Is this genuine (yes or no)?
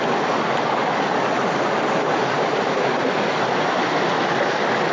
yes